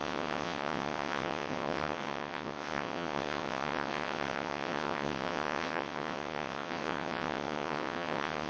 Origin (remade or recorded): remade